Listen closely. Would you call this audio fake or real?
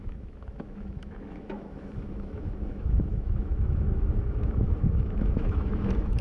fake